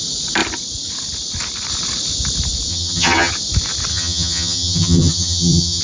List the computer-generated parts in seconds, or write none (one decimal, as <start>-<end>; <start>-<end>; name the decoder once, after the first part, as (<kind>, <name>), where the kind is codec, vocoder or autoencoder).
2.7-3.3 (vocoder, HiFi-GAN); 3.9-5.8